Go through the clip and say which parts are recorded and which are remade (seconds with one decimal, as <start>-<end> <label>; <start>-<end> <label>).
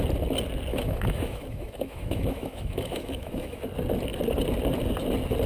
0.0-0.7 recorded; 0.7-3.6 remade; 3.6-5.5 recorded